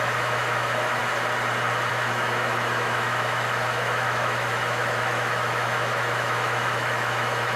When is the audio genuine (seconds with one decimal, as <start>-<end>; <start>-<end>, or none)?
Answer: 1.0-1.9